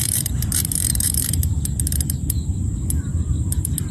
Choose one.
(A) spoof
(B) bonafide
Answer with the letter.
A